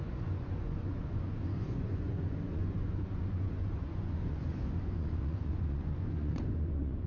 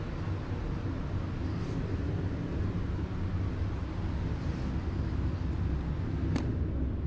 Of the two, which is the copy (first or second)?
first